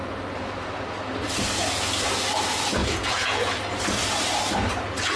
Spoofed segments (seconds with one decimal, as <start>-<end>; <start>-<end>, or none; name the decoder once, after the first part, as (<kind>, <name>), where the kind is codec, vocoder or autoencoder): 2.8-3.5 (vocoder, Vocos)